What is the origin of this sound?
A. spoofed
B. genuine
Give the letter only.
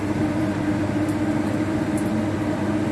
B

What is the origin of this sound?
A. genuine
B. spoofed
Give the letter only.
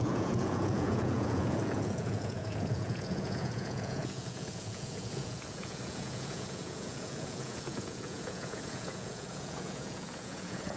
B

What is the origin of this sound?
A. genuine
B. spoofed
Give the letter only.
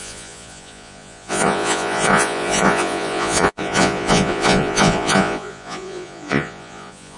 B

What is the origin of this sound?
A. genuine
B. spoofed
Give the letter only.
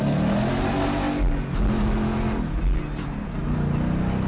A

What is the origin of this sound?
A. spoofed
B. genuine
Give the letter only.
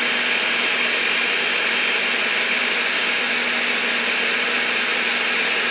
B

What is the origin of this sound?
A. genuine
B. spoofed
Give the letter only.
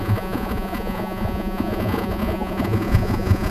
B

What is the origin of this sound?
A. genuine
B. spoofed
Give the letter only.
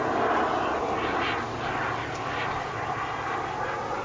A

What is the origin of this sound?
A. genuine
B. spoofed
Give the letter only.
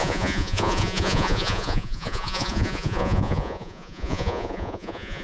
B